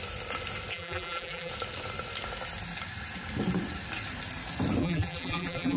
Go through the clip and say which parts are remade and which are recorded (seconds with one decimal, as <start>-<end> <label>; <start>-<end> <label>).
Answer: 0.0-0.7 recorded; 0.7-1.5 remade; 1.5-4.8 recorded; 4.8-5.8 remade